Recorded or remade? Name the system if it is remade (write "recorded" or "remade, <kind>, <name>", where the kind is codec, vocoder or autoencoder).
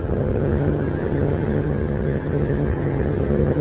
remade, vocoder, HiFi-GAN